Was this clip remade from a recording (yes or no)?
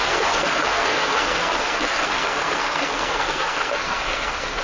yes